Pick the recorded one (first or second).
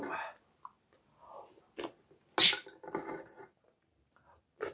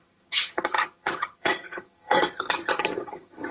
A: first